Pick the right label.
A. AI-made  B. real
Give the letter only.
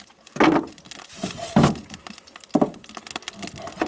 B